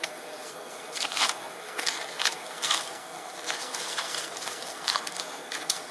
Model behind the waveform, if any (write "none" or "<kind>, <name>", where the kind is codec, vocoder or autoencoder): codec, SNAC